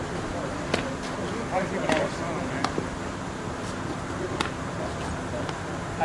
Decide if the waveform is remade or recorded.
recorded